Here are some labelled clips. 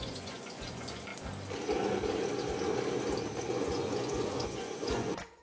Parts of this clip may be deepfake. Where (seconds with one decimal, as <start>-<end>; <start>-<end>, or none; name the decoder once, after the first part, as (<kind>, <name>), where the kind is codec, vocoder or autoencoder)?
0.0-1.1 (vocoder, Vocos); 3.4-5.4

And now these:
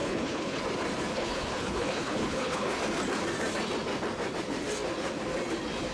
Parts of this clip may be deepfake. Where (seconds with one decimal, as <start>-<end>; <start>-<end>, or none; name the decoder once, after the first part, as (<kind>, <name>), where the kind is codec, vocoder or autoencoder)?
0.0-0.6 (codec, HILCodec); 1.1-2.8

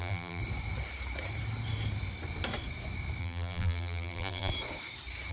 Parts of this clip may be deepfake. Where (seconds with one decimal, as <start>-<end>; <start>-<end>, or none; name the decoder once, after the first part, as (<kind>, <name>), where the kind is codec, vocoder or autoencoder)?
0.0-0.4 (vocoder, BigVGAN v2); 3.2-4.5

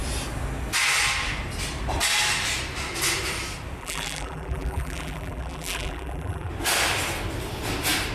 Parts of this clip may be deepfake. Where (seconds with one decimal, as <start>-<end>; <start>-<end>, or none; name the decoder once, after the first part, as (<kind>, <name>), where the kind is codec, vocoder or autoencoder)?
3.8-6.5 (vocoder, BigVGAN v2)